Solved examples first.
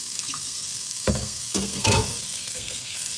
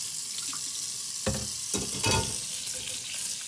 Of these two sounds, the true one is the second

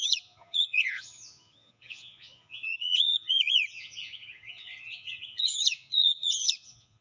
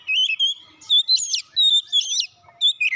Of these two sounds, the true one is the second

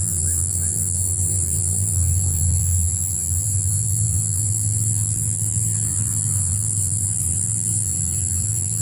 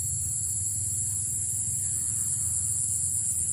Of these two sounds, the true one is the second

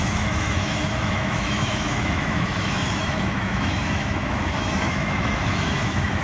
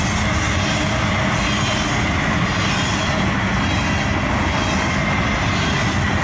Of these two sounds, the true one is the second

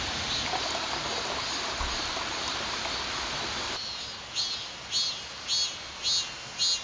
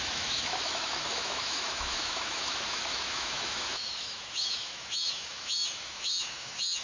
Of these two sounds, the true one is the first